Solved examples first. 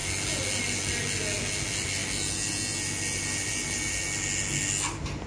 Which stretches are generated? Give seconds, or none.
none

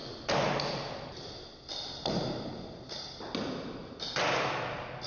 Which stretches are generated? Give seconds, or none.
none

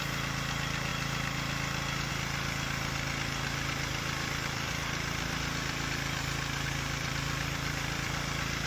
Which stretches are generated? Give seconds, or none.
3.9-8.2 (vocoder, BigVGAN v2)